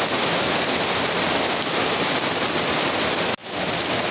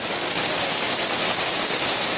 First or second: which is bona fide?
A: first